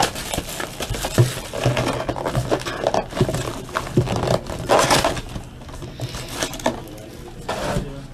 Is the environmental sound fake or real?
real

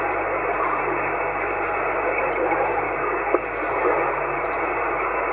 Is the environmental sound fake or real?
real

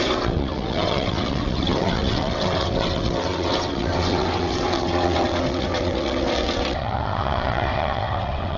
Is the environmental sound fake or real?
fake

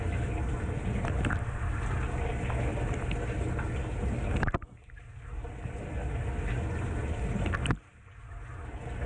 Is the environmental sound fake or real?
real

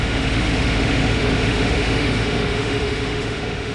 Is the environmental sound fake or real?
fake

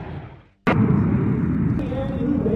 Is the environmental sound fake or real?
real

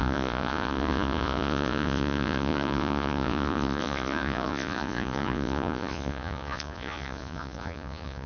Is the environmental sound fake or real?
fake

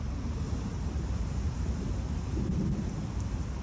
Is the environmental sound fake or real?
real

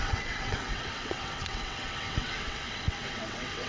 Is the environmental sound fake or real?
fake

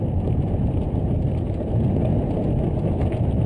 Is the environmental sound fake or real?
real